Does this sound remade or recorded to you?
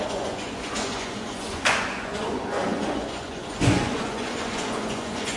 remade